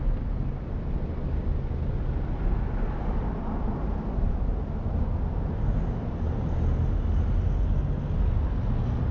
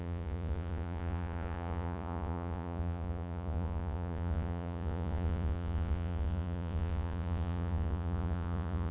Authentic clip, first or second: first